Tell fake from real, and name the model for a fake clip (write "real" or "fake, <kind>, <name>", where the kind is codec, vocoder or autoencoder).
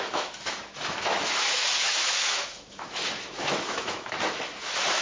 fake, autoencoder, DAC-VAE